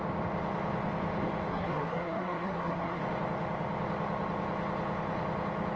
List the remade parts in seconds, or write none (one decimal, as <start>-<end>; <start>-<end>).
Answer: 1.5-3.0